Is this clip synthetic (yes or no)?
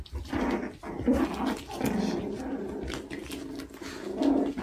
no